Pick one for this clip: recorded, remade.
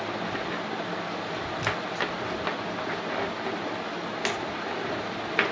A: recorded